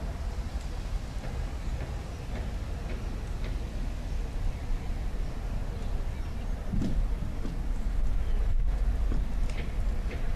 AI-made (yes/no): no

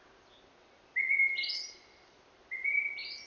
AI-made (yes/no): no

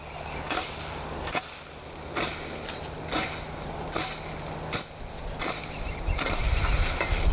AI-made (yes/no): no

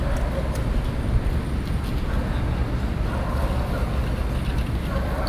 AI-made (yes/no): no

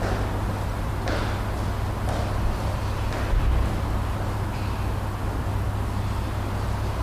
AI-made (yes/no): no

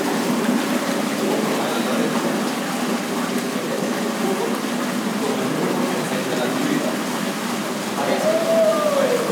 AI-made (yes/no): no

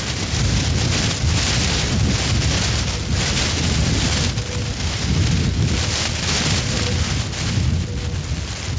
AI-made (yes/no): no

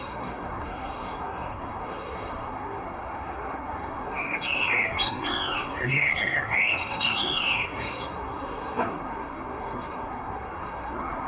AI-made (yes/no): yes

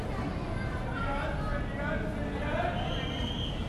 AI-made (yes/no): no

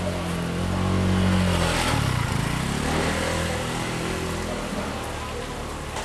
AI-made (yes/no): no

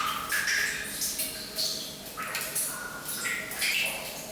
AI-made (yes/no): no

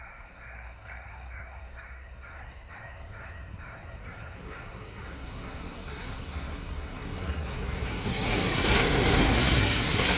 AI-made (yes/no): yes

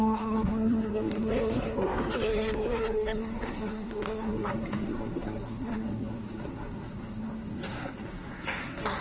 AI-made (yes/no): yes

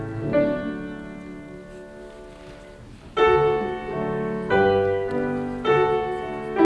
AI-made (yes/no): no